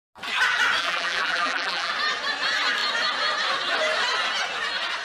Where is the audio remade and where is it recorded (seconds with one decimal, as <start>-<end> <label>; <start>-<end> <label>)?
0.0-0.8 recorded; 0.8-1.9 remade; 1.9-5.0 recorded